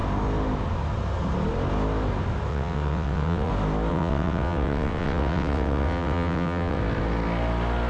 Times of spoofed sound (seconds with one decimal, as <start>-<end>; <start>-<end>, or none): 2.5-3.5; 3.9-6.8